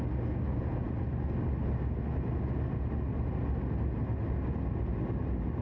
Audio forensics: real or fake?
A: real